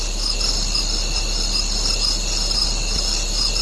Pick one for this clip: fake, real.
real